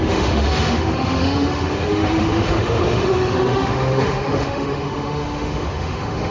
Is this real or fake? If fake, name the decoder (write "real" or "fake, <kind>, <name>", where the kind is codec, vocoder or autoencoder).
fake, autoencoder, DAC-VAE